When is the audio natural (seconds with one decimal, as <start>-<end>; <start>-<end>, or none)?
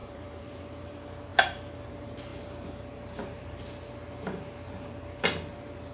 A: 0.9-2.3; 3.6-5.9